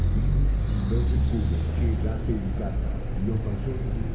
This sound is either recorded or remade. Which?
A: recorded